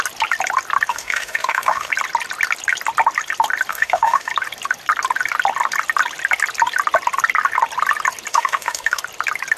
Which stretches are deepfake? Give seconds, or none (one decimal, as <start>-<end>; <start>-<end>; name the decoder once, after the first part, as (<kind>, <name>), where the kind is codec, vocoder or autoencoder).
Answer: 0.9-1.9 (autoencoder, DAC-VAE); 3.7-4.3; 8.3-9.0